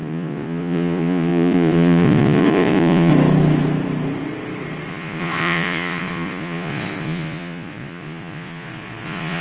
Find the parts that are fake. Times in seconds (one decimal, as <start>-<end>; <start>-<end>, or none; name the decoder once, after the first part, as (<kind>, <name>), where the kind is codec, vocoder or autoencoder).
0.0-3.1 (vocoder, Vocos); 4.9-9.4